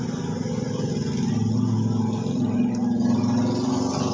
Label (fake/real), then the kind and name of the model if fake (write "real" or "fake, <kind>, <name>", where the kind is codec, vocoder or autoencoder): real